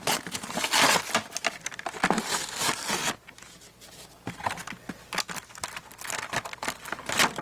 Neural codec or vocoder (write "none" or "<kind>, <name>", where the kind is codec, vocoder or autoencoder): none